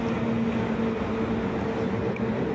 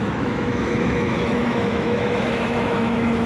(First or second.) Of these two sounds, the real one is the first